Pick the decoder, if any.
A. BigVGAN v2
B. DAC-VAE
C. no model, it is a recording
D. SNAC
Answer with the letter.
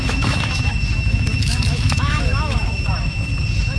B